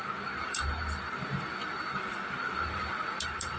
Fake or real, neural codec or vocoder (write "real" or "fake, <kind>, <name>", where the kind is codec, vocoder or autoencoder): real